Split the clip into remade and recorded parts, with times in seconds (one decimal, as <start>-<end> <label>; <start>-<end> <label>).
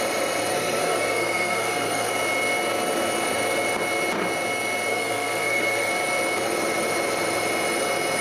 0.0-0.5 recorded; 0.5-2.1 remade; 2.1-4.9 recorded; 4.9-5.9 remade; 5.9-8.2 recorded